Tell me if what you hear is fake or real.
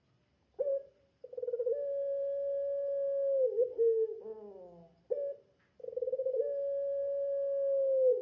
real